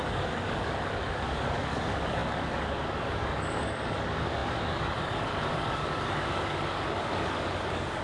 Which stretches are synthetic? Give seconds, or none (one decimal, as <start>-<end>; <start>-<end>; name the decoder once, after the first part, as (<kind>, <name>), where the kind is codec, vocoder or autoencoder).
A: 0.0-8.0 (codec, DAC)